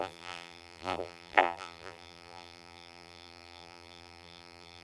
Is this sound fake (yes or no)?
yes